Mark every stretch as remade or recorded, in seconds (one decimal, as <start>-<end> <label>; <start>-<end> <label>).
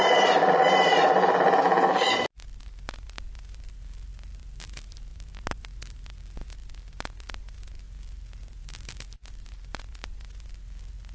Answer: 0.0-11.1 recorded